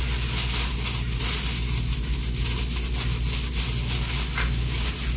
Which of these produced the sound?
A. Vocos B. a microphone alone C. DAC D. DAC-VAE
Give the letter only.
B